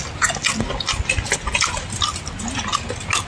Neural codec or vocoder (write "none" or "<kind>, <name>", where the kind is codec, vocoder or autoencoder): none